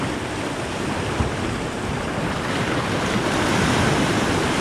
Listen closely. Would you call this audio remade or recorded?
recorded